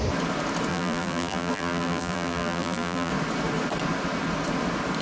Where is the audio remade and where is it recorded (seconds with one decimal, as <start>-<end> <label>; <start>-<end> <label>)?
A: 0.0-0.7 recorded; 0.7-3.1 remade; 3.1-5.0 recorded